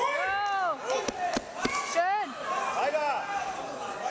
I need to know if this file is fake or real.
real